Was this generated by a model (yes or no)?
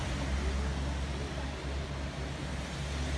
no